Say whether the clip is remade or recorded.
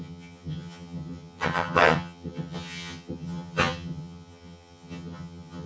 remade